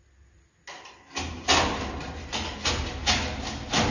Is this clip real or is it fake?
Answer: real